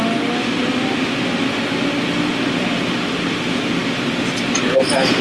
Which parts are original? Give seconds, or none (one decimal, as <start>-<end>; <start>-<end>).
0.0-5.2